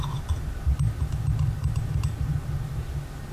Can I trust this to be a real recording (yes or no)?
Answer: yes